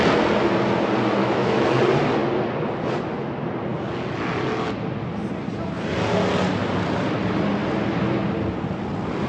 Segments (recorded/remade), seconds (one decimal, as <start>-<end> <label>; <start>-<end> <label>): 0.0-1.2 recorded; 1.2-1.8 remade; 1.8-9.3 recorded